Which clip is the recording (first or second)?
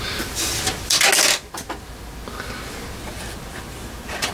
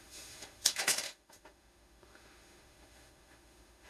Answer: first